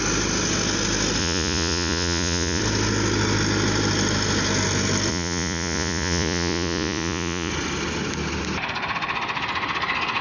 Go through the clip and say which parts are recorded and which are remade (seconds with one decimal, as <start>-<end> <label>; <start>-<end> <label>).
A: 0.0-1.2 recorded; 1.2-2.6 remade; 2.6-5.1 recorded; 5.1-7.5 remade; 7.5-10.2 recorded